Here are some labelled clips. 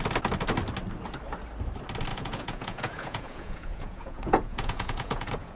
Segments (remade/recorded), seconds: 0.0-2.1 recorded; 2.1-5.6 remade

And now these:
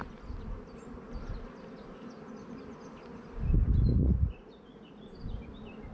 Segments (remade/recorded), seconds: 0.0-3.9 recorded; 3.9-5.2 remade; 5.2-5.9 recorded

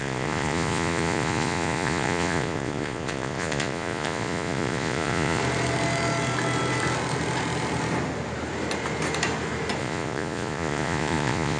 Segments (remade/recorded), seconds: 0.0-5.4 remade; 5.4-9.8 recorded; 9.8-11.6 remade

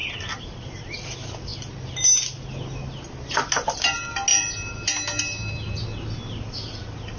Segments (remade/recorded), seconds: 0.0-7.2 recorded

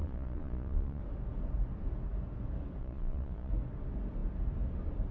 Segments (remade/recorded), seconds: 0.0-1.0 remade; 1.0-2.8 recorded; 2.8-3.5 remade; 3.5-5.1 recorded

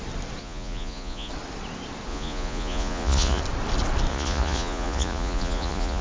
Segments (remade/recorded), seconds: 0.0-0.4 recorded; 0.4-1.3 remade; 1.3-2.1 recorded; 2.1-3.4 remade; 3.4-4.1 recorded; 4.1-6.0 remade

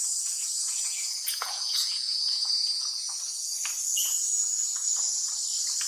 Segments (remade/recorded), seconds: 0.0-3.5 remade; 3.5-3.9 recorded; 3.9-5.3 remade; 5.3-5.9 recorded

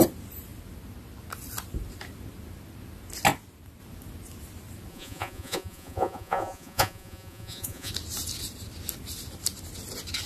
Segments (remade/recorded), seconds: 0.0-4.9 recorded; 4.9-7.9 remade; 7.9-10.3 recorded